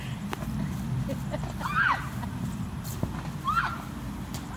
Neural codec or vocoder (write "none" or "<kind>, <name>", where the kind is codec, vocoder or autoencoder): none